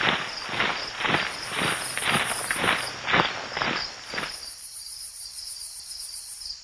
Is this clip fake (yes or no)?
no